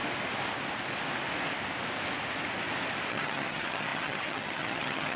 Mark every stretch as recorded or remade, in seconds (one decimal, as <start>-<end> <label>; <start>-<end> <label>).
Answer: 0.0-3.1 recorded; 3.1-5.2 remade